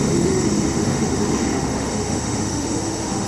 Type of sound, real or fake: fake